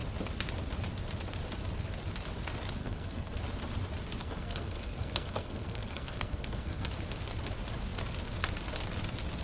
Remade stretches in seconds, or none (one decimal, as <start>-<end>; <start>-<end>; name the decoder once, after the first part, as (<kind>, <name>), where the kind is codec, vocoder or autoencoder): 2.8-3.4 (codec, SNAC); 4.2-6.9